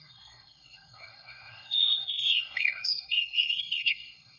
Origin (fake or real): fake